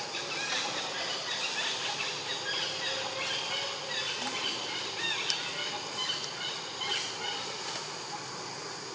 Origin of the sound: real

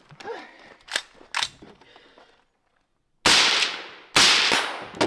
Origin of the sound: real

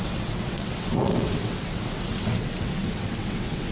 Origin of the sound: fake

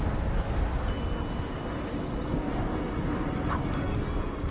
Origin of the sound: real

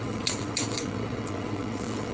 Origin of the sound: fake